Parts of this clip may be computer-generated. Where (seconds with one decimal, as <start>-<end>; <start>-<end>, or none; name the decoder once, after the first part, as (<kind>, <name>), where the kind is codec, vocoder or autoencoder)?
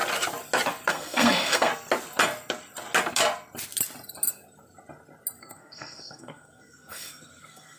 0.9-1.7 (codec, SNAC); 5.4-7.8